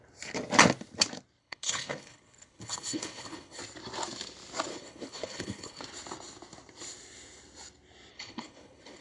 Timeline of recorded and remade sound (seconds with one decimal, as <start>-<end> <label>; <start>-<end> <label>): 0.0-1.4 recorded; 1.4-3.6 remade; 3.6-4.7 recorded; 4.7-5.8 remade; 5.8-8.1 recorded; 8.1-9.0 remade